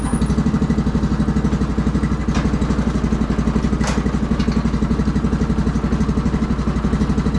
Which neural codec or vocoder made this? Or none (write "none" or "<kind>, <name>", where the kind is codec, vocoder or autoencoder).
none